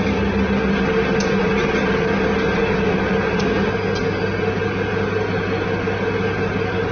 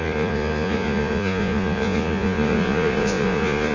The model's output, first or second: second